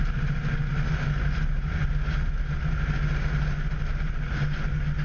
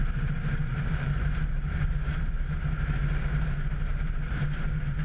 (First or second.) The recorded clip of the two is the first